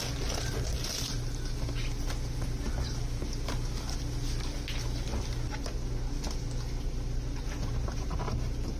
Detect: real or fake real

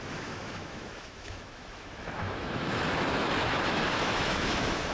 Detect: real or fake fake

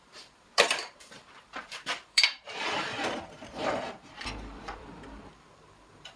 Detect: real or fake fake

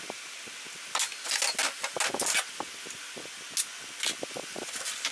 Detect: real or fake real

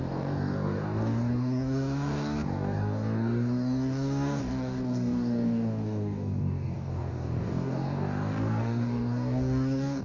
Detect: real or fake fake